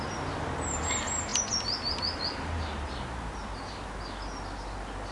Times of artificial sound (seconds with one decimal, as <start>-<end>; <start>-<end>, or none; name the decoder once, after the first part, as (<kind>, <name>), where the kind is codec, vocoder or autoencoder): none

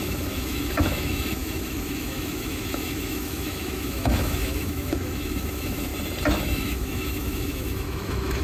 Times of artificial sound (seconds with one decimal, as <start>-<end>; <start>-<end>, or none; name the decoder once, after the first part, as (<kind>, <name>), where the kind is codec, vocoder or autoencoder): 0.0-5.9 (autoencoder, DAC-VAE); 6.4-8.4

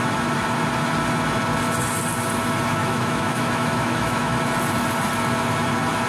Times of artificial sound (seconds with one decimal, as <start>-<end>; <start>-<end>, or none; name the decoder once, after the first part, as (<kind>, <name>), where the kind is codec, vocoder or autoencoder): 2.8-4.4 (autoencoder, DAC-VAE)

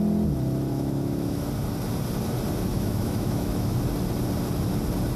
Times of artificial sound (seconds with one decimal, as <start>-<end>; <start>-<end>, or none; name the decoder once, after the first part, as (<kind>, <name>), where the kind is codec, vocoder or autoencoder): 0.7-1.5 (autoencoder, DAC-VAE); 2.7-3.8

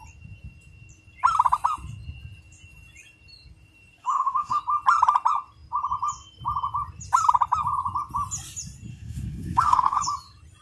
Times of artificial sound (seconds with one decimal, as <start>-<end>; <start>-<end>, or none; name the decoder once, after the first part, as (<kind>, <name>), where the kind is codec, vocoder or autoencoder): 4.0-4.6 (autoencoder, DAC-VAE); 8.9-10.0

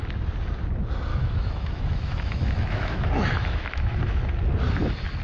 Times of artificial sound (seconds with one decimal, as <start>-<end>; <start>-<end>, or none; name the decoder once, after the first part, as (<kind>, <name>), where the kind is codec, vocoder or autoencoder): 1.1-4.2 (autoencoder, DAC-VAE)

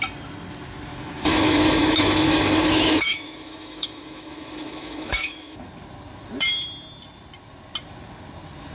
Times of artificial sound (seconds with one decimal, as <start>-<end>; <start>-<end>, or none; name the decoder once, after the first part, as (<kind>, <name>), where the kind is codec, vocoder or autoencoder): 0.9-5.7 (autoencoder, DAC-VAE)

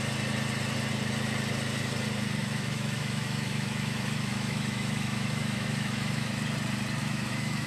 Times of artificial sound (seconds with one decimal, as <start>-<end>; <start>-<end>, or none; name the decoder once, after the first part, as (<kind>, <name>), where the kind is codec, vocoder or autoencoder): 2.4-6.3 (autoencoder, DAC-VAE); 7.0-7.7